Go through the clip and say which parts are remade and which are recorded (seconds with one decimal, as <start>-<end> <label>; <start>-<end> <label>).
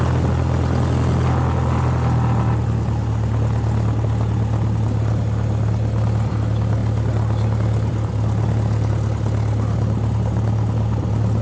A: 0.0-11.4 recorded